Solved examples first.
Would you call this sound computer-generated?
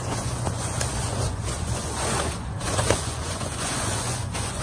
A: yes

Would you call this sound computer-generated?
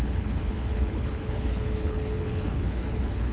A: yes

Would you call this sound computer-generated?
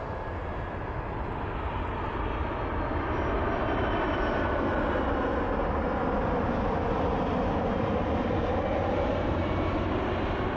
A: no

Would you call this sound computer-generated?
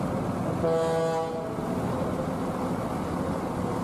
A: no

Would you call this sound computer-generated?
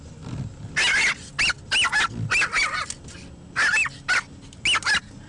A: no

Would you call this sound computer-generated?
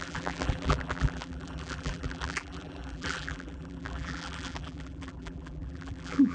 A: yes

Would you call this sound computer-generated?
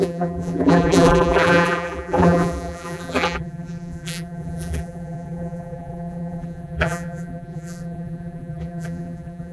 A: yes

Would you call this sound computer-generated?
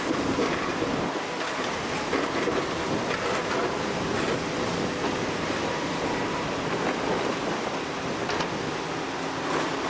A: no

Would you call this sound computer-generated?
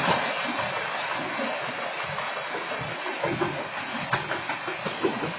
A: no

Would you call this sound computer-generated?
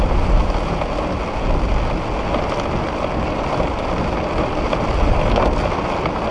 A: no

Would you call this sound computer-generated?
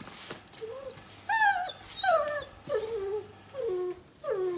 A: no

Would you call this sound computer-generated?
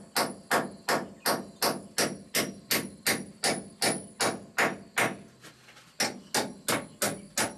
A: no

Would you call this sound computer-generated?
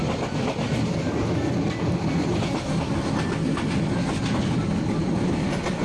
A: no